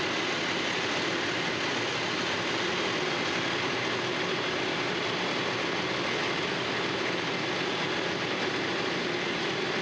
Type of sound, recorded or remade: recorded